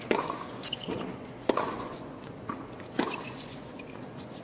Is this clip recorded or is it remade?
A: remade